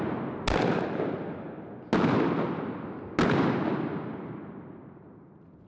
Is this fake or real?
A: real